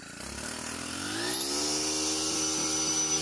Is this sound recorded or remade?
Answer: recorded